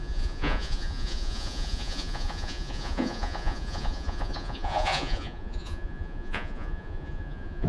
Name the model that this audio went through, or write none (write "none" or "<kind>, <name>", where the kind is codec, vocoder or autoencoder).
vocoder, Vocos